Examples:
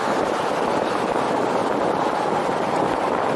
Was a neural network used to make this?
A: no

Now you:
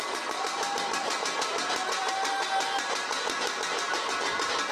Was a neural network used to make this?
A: no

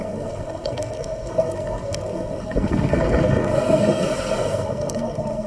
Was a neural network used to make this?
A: yes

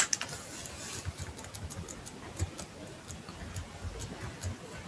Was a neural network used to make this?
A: no